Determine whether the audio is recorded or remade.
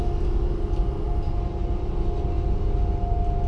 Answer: recorded